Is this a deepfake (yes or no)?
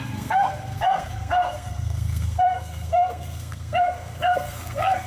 yes